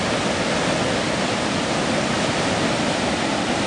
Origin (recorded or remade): recorded